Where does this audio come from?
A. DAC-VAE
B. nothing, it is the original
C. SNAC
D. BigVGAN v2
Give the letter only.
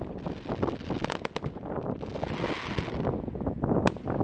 B